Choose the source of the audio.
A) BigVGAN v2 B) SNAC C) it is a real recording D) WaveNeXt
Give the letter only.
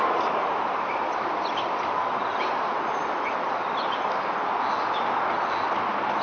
C